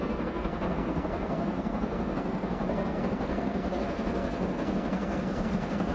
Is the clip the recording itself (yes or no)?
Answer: no